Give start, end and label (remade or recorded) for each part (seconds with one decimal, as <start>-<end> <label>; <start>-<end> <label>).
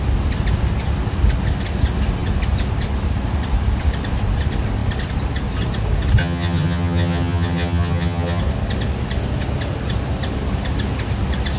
0.0-6.2 recorded; 6.2-8.4 remade; 8.4-11.6 recorded